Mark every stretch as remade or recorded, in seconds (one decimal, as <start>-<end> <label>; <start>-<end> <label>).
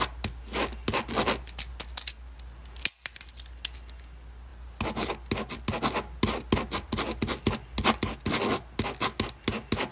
0.0-9.9 recorded